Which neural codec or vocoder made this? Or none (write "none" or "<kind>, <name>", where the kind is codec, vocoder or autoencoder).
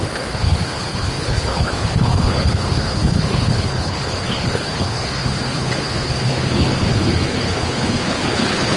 codec, HILCodec